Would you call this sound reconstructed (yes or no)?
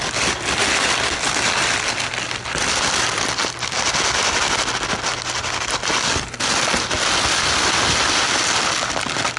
no